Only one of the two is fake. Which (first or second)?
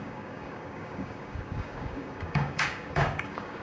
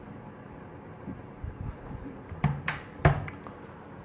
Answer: first